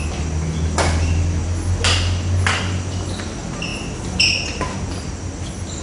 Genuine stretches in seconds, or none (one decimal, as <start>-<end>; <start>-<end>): 0.0-5.8